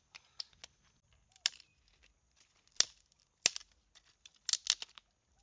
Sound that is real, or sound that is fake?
real